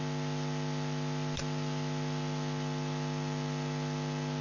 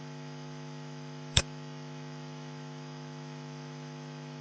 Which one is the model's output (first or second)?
second